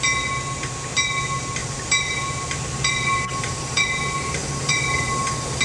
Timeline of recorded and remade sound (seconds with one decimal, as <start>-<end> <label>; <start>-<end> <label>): 0.0-1.6 recorded; 1.6-4.0 remade; 4.0-4.4 recorded; 4.4-5.0 remade; 5.0-5.6 recorded